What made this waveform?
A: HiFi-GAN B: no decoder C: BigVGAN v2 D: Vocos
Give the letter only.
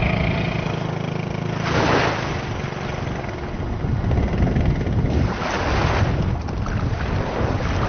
B